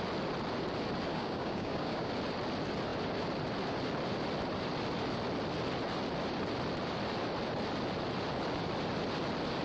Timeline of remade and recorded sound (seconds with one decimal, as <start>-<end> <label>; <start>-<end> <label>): 0.0-1.1 recorded; 1.1-2.1 remade; 2.1-9.6 recorded